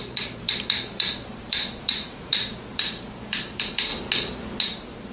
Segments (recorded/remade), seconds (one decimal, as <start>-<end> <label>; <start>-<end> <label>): 0.0-3.9 remade; 3.9-4.6 recorded; 4.6-5.1 remade